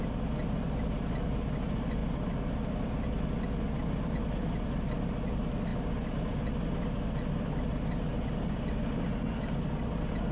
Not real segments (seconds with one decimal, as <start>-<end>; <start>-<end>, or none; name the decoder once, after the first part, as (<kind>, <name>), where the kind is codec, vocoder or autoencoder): none